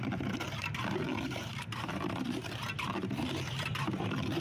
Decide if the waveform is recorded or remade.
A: remade